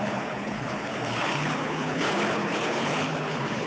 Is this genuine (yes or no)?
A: no